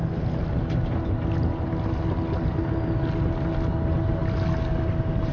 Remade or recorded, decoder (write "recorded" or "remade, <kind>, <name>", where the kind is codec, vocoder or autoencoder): recorded